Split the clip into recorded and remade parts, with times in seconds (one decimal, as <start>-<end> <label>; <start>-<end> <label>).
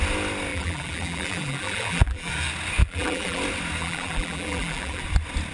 0.0-0.5 recorded; 0.5-2.3 remade; 2.3-2.8 recorded; 2.8-3.4 remade; 3.4-3.8 recorded; 3.8-5.0 remade; 5.0-5.5 recorded